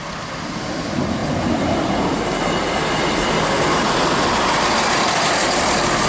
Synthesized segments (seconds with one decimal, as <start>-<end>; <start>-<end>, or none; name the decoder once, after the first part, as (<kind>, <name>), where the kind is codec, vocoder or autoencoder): none